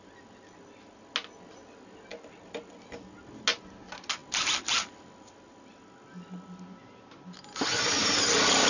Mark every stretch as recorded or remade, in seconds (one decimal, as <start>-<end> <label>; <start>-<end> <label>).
0.0-8.7 recorded